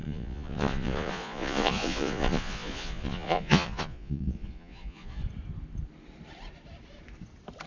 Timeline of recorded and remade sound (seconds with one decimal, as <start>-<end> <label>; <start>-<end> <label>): 0.0-5.2 remade; 5.2-7.7 recorded